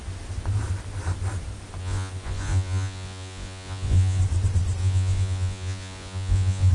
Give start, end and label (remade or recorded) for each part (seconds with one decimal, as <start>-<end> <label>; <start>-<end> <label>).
0.0-1.8 recorded; 1.8-4.2 remade; 4.2-4.8 recorded; 4.8-6.7 remade